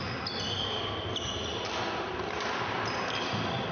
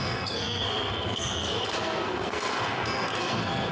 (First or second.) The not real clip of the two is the second